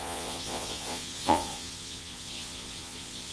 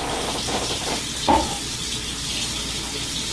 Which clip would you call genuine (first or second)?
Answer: second